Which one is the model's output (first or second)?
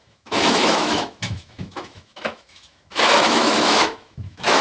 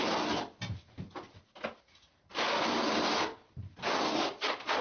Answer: first